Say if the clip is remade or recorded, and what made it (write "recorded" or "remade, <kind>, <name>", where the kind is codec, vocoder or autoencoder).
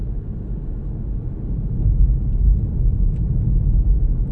recorded